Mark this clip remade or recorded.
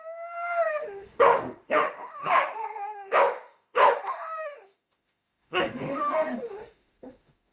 remade